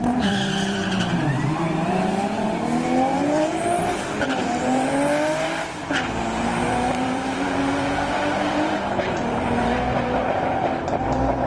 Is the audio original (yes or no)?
no